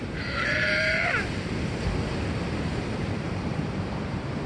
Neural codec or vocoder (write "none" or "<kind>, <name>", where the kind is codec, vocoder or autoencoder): vocoder, BigVGAN v2